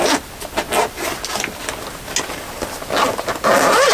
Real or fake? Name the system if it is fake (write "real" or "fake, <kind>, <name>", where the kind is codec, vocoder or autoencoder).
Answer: real